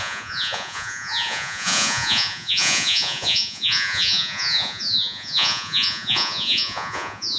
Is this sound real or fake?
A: fake